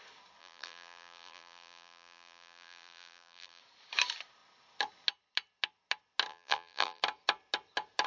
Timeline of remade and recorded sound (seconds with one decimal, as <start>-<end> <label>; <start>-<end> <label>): 0.0-0.4 recorded; 0.4-3.6 remade; 3.6-6.3 recorded; 6.3-7.0 remade; 7.0-8.1 recorded